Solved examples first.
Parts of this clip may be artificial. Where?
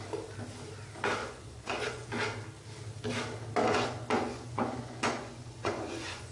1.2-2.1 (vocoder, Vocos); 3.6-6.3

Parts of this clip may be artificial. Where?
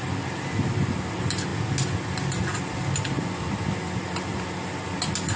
none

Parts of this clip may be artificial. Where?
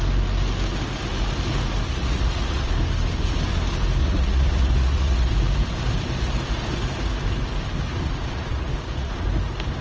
1.9-2.7 (vocoder, Vocos); 4.0-5.3; 7.9-9.3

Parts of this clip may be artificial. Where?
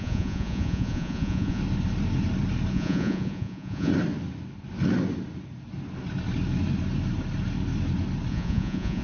0.0-1.6 (vocoder, Vocos); 2.7-3.9; 8.3-9.0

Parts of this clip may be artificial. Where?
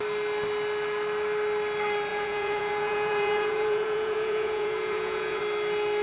2.1-5.4 (vocoder, Vocos)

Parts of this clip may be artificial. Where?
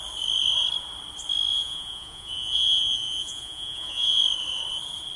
1.5-4.2 (vocoder, Vocos)